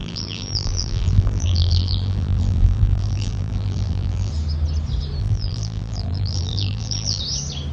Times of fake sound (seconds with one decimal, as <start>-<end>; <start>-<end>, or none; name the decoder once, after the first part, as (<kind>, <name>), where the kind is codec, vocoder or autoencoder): 0.0-4.3 (vocoder, BigVGAN v2); 5.2-7.2